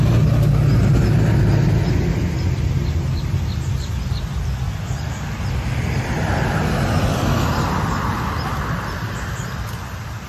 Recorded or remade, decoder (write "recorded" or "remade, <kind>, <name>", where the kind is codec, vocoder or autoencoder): recorded